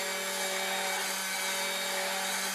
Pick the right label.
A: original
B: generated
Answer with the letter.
A